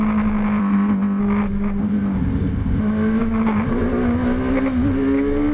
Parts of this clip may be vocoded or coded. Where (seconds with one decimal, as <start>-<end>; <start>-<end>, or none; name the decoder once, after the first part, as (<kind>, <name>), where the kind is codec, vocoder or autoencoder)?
0.6-1.2 (codec, ZipCodec); 1.8-2.8